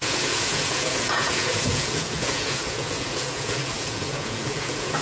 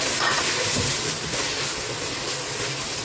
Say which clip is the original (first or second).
second